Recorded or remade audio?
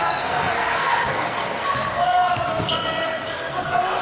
remade